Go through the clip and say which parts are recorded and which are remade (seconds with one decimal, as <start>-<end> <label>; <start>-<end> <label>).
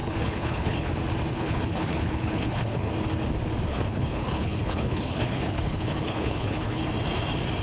0.0-0.9 remade; 0.9-1.3 recorded; 1.3-2.9 remade; 2.9-3.7 recorded; 3.7-6.8 remade; 6.8-7.6 recorded